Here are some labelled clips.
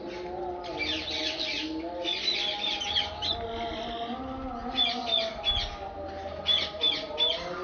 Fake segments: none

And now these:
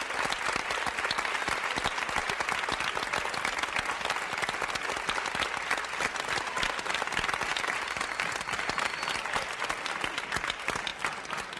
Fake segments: 10.9-11.6 (vocoder, BigVGAN v2)